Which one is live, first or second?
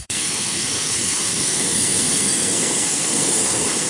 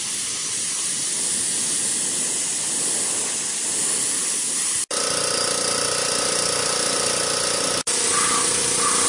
second